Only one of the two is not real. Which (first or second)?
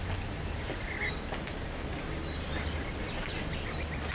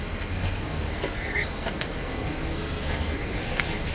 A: second